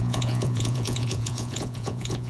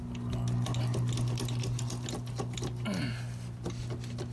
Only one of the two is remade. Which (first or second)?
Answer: first